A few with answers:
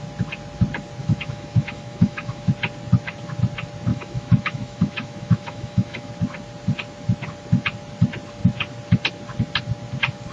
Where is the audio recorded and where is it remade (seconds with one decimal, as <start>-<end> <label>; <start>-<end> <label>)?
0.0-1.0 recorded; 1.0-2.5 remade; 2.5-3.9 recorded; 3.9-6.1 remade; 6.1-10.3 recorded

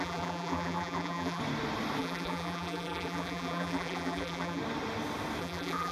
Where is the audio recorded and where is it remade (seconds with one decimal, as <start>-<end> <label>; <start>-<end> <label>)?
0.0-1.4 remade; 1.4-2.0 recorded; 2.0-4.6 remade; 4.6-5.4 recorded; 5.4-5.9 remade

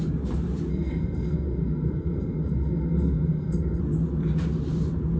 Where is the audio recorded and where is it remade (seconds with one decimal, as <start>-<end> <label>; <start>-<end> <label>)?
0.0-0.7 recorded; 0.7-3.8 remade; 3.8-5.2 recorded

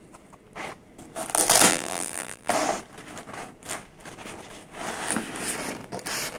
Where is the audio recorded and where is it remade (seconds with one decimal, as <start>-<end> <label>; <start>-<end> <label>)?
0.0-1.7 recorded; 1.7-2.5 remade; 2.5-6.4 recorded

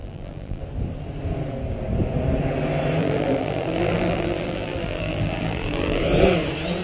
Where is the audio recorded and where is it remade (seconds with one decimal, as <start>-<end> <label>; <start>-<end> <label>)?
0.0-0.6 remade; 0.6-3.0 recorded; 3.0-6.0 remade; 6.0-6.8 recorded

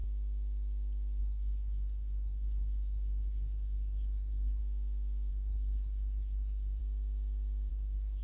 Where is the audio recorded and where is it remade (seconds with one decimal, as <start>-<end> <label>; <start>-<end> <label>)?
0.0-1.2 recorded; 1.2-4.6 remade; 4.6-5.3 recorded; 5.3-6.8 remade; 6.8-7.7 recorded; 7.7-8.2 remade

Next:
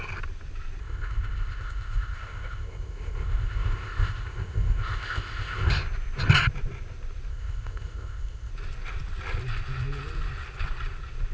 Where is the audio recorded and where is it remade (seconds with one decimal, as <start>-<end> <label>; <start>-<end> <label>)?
0.0-0.8 recorded; 0.8-5.7 remade; 5.7-7.3 recorded; 7.3-8.5 remade; 8.5-11.3 recorded